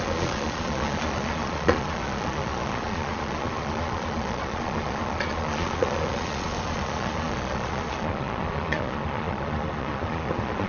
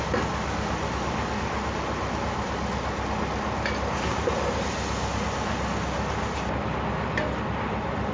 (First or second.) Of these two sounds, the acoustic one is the second